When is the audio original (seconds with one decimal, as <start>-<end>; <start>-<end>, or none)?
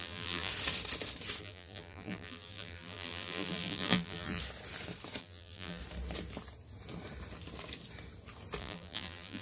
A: 0.5-1.4; 4.4-5.2; 5.8-8.6